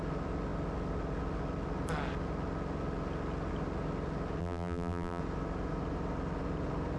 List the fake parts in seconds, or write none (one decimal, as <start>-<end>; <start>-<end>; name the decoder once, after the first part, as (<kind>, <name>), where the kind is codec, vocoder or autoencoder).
4.4-5.2 (vocoder, BigVGAN v2)